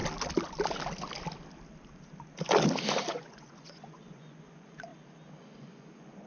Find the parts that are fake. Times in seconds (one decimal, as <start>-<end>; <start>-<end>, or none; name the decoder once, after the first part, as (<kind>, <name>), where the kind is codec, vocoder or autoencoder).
3.1-4.9 (vocoder, Vocos); 5.4-6.3